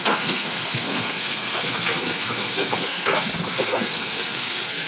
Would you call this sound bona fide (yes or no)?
no